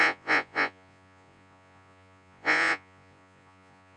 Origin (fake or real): fake